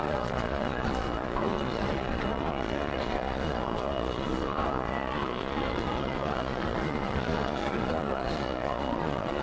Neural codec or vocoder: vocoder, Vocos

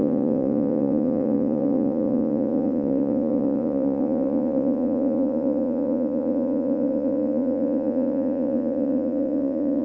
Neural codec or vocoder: vocoder, Vocos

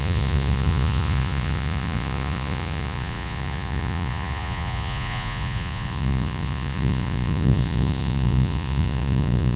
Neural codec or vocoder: vocoder, Vocos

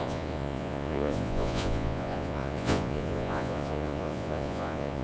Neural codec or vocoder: vocoder, Vocos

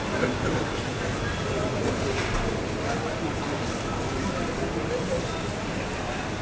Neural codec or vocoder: none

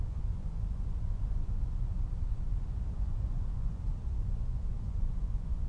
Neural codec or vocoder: vocoder, Vocos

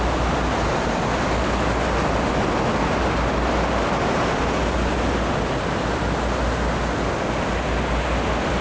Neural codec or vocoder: none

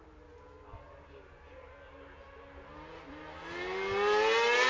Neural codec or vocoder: none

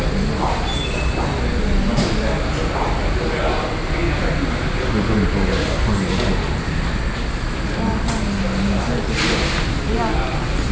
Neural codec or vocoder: none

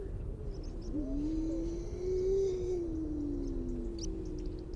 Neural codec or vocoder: none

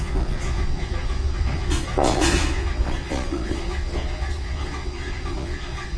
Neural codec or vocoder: vocoder, Vocos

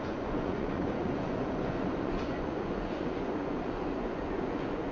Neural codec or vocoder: vocoder, Vocos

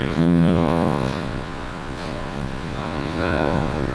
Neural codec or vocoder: vocoder, Vocos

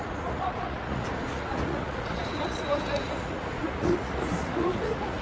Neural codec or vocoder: vocoder, Vocos